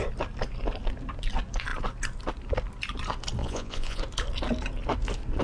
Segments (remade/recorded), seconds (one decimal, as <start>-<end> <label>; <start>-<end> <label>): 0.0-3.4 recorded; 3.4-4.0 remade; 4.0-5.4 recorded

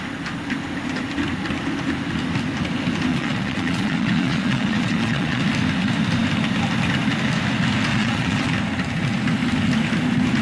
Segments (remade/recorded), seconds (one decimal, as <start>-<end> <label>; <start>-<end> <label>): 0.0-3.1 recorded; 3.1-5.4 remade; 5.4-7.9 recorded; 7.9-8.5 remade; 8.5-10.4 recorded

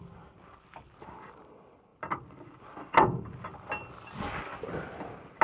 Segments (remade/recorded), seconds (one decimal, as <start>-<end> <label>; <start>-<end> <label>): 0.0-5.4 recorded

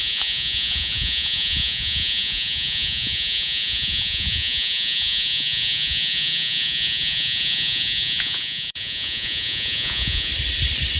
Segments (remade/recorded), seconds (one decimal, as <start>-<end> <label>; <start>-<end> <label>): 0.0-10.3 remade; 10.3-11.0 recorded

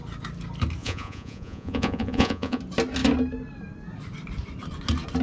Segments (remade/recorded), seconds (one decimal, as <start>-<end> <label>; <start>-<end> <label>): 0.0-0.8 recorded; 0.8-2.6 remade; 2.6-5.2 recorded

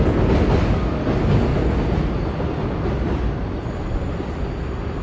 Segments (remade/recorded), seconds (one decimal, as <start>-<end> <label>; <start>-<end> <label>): 0.0-5.0 recorded